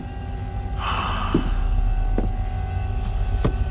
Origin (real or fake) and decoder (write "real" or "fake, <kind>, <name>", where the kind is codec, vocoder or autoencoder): real